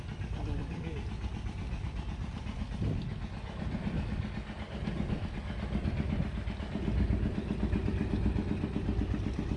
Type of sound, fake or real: real